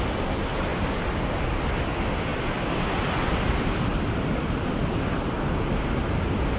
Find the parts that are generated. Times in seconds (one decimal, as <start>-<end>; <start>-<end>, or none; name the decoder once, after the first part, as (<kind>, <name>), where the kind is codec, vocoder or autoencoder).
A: none

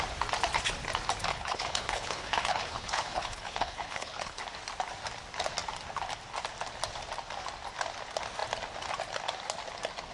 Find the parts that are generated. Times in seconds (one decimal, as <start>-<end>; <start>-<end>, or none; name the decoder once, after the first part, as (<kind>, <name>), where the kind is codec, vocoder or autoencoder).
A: 1.3-4.4 (codec, HILCodec)

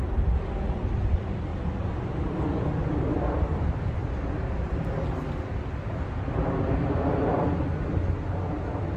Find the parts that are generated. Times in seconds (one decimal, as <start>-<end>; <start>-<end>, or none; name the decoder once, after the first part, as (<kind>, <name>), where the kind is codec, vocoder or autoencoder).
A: 1.5-2.7 (vocoder, BigVGAN v2)

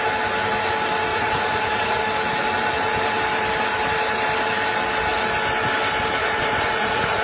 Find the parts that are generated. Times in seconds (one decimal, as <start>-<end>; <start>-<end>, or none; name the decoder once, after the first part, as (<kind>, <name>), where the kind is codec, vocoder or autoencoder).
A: 1.1-2.0 (vocoder, Vocos); 6.2-7.2

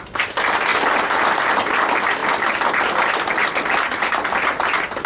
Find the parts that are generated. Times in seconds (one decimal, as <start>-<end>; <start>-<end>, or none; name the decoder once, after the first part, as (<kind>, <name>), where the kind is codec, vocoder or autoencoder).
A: 2.2-4.5 (vocoder, BigVGAN v2)

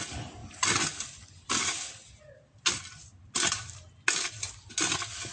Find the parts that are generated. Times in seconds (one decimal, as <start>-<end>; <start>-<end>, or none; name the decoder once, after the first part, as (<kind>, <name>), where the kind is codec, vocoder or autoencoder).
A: none

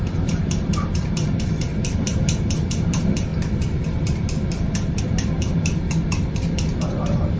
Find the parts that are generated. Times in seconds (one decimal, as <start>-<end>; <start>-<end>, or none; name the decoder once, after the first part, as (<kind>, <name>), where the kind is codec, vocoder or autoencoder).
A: 0.0-3.3 (vocoder, BigVGAN v2); 5.0-7.4

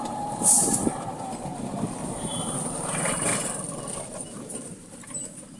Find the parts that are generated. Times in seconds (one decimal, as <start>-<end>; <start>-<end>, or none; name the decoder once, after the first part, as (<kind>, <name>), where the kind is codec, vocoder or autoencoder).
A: 0.0-1.5 (vocoder, BigVGAN v2); 2.1-3.3; 3.9-5.6